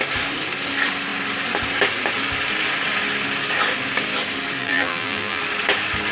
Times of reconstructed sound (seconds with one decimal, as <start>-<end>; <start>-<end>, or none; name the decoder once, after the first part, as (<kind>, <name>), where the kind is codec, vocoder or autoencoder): 4.6-5.4 (vocoder, BigVGAN v2)